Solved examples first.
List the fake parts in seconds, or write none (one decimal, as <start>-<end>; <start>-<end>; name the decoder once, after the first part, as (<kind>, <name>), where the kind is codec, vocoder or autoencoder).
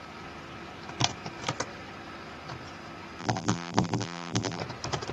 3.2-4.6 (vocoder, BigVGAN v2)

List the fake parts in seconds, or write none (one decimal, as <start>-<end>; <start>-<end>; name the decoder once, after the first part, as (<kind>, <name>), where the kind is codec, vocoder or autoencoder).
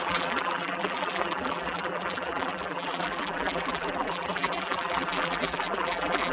0.0-6.3 (vocoder, BigVGAN v2)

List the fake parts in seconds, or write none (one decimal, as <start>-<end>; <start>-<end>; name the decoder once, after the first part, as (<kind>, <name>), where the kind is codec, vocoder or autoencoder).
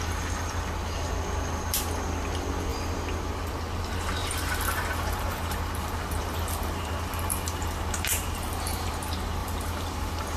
4.2-8.9 (vocoder, BigVGAN v2); 9.4-10.4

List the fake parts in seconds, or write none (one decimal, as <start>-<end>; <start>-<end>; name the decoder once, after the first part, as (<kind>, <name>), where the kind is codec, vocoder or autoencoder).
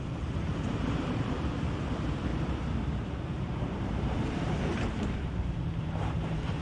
0.0-6.6 (vocoder, BigVGAN v2)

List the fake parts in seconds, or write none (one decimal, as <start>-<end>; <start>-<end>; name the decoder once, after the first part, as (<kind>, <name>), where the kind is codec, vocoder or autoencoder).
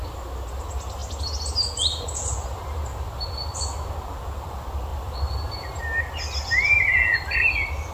none